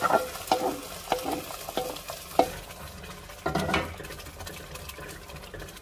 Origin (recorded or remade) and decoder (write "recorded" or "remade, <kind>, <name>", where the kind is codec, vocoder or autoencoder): recorded